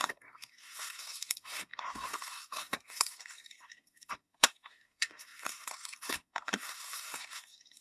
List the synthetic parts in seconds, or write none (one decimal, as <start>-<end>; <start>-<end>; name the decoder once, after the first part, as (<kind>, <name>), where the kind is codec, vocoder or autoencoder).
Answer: 0.0-7.8 (codec, SNAC)